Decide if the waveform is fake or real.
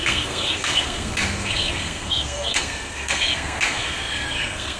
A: fake